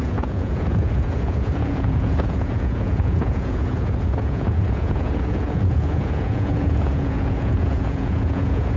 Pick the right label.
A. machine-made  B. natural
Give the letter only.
A